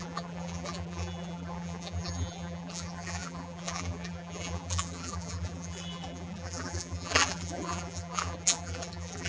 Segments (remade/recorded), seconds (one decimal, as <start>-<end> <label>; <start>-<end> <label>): 0.0-9.3 remade